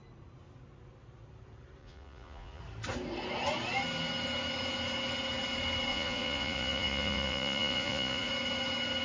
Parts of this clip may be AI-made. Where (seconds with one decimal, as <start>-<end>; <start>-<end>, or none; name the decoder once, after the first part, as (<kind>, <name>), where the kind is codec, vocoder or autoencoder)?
1.8-2.6 (vocoder, Vocos); 5.9-8.3